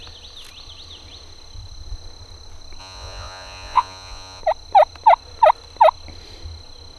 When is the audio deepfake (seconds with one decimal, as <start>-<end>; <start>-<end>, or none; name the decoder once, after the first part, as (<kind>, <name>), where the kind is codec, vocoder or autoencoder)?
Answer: 2.8-4.4 (vocoder, Vocos)